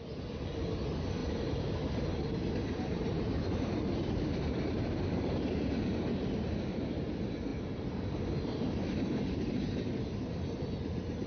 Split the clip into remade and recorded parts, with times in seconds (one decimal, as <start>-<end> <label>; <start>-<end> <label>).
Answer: 0.0-1.2 recorded; 1.2-5.8 remade; 5.8-11.3 recorded

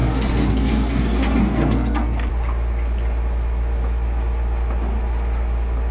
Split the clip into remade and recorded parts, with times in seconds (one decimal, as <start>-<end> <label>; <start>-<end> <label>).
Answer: 0.0-2.3 remade; 2.3-5.9 recorded

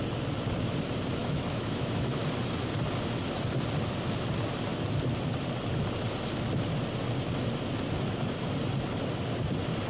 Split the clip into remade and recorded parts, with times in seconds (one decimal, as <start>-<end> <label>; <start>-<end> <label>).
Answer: 0.0-1.2 recorded; 1.2-2.2 remade; 2.2-9.9 recorded

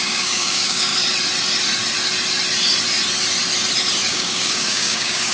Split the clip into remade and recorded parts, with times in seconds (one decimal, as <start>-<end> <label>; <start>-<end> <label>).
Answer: 0.0-0.9 remade; 0.9-4.1 recorded; 4.1-5.3 remade

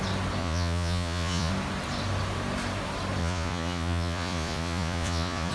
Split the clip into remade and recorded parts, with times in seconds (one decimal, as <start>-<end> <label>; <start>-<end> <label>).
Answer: 0.0-0.4 recorded; 0.4-1.5 remade; 1.5-3.2 recorded; 3.2-5.5 remade